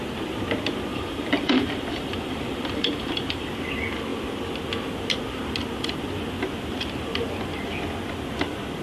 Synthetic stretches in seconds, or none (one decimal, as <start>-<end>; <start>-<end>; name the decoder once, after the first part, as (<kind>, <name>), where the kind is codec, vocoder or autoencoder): 0.9-3.5 (vocoder, BigVGAN v2)